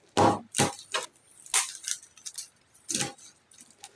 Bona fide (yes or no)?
yes